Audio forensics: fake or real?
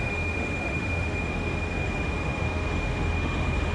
fake